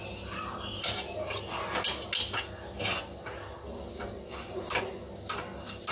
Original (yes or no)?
yes